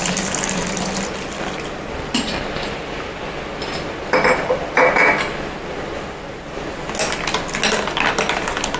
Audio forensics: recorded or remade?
recorded